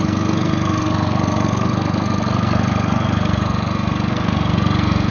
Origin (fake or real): fake